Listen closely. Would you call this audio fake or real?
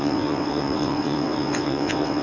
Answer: fake